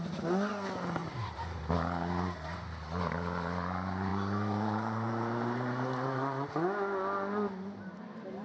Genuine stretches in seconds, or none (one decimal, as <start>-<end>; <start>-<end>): 0.0-1.0; 1.6-4.1; 6.5-8.4